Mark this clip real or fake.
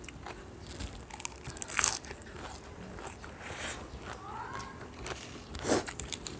real